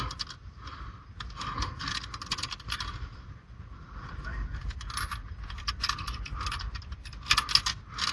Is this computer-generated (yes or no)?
no